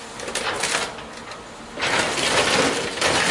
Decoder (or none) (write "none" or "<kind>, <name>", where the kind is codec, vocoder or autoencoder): none